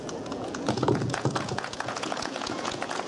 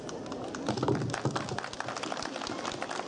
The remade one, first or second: first